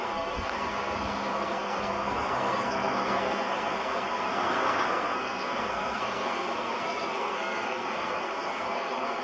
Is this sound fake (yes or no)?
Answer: yes